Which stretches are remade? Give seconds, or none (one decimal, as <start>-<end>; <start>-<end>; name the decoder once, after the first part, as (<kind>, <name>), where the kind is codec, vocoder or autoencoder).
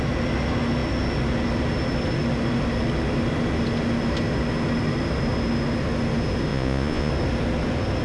6.5-7.1 (vocoder, Vocos)